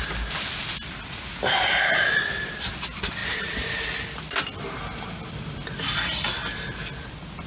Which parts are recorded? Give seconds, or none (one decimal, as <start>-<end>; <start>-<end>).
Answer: 0.0-7.5

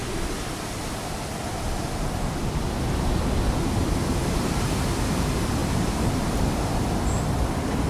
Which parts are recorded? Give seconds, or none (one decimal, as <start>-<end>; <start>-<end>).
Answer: 0.0-4.2; 4.7-5.6; 6.6-7.9

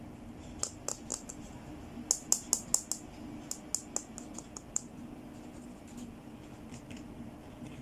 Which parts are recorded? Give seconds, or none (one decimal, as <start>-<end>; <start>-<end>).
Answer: 0.0-7.8

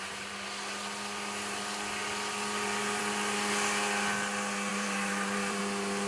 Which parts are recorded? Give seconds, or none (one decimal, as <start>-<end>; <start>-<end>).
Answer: 0.0-4.7; 5.6-6.1

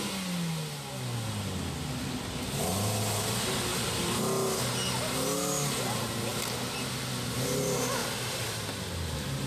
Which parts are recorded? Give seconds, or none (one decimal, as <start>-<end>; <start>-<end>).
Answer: 0.0-3.7; 4.2-8.0; 8.9-9.5

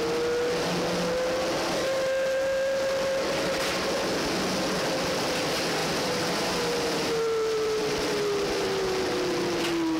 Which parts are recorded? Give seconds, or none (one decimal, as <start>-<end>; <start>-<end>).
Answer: 0.0-5.8; 9.0-10.0

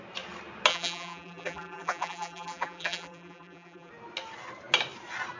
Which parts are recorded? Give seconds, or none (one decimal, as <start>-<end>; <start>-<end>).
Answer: 0.0-0.7; 3.9-5.4

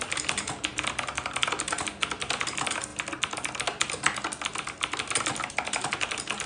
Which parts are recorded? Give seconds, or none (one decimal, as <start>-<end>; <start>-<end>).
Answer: 0.0-0.7; 2.4-6.5